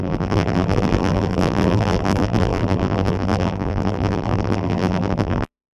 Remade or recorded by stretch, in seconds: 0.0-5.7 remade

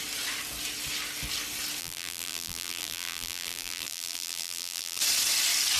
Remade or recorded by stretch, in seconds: 0.0-1.8 recorded; 1.8-5.0 remade; 5.0-5.8 recorded

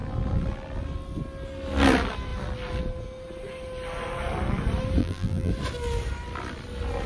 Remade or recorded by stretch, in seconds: 0.0-5.0 recorded; 5.0-5.5 remade; 5.5-7.1 recorded

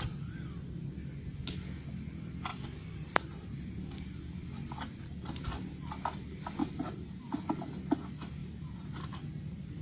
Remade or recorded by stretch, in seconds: 0.0-2.5 recorded; 2.5-3.7 remade; 3.7-6.6 recorded; 6.6-7.2 remade; 7.2-8.4 recorded; 8.4-9.8 remade

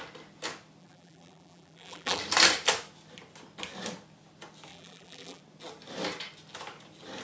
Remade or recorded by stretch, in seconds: 0.0-0.8 recorded; 0.8-2.2 remade; 2.2-4.7 recorded; 4.7-5.4 remade; 5.4-7.2 recorded